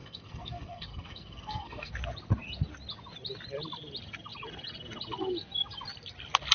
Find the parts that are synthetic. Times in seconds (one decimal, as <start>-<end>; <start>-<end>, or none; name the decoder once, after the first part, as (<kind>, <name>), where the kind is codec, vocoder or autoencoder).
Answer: 0.0-1.9 (codec, SNAC)